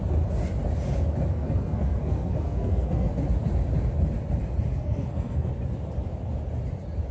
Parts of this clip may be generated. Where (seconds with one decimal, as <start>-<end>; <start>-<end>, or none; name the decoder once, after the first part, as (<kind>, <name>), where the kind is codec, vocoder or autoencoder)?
1.3-3.1 (codec, SNAC); 4.7-5.5